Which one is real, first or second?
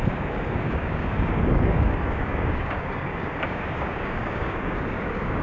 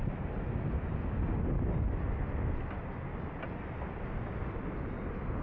second